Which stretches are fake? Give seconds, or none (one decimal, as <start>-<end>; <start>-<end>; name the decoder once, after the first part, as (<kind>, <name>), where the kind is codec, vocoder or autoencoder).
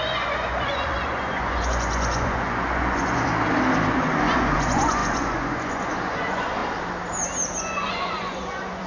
0.0-3.3 (vocoder, Vocos); 3.9-6.6; 7.6-8.9